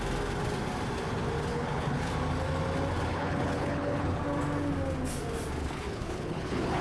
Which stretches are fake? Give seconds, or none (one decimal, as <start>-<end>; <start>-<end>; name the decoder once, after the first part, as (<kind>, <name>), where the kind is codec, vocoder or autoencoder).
1.5-2.1 (codec, HILCodec); 3.1-4.2; 5.6-6.8